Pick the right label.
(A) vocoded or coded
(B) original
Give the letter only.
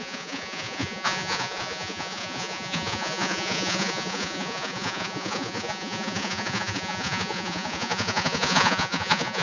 A